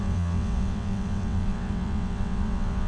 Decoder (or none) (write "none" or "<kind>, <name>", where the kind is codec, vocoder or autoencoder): vocoder, WaveNeXt